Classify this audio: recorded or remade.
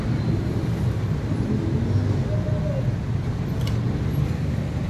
recorded